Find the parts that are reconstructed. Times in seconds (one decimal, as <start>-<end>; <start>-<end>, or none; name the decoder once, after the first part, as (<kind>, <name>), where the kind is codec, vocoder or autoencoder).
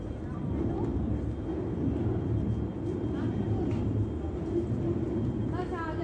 none